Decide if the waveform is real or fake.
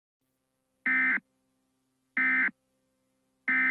real